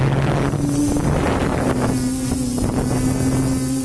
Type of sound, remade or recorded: recorded